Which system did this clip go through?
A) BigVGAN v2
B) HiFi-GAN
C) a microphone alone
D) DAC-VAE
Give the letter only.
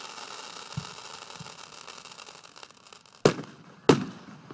C